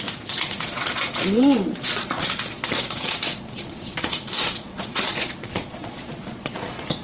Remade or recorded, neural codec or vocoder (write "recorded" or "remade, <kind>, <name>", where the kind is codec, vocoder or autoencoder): remade, vocoder, Vocos